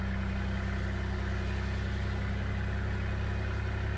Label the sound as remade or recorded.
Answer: recorded